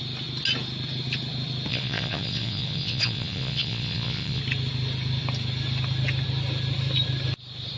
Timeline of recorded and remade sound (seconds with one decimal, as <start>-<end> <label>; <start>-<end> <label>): 0.0-1.7 recorded; 1.7-4.4 remade; 4.4-7.8 recorded